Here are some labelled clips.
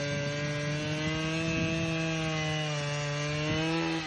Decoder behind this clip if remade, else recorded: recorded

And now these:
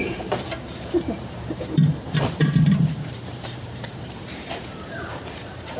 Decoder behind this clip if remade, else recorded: remade, vocoder, BigVGAN v2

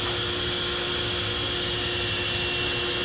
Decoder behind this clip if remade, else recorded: recorded